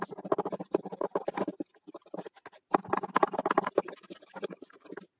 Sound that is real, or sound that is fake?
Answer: real